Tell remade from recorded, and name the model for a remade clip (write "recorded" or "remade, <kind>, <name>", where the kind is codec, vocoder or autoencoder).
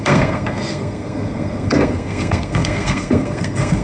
remade, codec, SNAC